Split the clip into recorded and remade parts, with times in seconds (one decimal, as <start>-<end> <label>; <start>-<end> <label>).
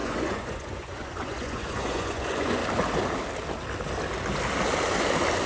0.0-2.6 remade; 2.6-5.5 recorded